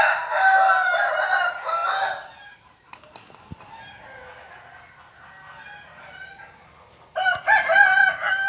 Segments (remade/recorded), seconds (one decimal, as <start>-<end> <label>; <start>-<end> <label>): 0.0-8.5 recorded